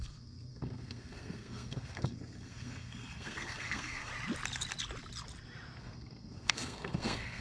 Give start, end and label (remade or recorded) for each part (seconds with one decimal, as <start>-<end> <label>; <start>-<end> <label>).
0.0-4.1 remade; 4.1-5.8 recorded; 5.8-7.4 remade